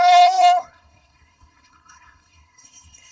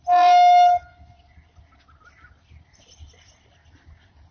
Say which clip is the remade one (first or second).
first